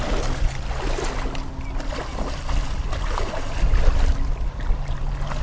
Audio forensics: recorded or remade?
recorded